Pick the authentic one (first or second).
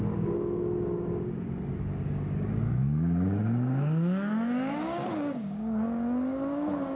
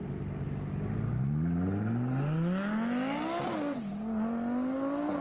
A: second